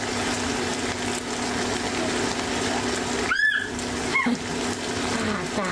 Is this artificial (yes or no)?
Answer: no